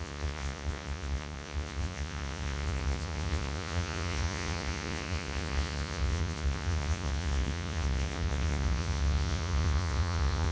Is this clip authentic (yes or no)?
no